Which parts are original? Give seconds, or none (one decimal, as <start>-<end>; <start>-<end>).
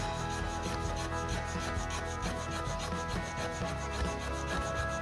0.0-5.0